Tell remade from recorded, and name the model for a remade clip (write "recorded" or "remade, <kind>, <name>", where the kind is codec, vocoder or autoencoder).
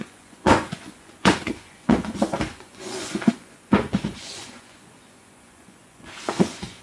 remade, vocoder, Vocos